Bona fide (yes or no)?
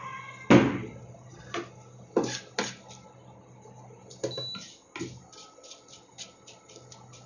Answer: yes